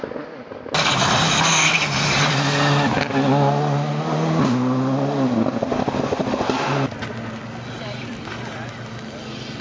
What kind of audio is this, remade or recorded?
recorded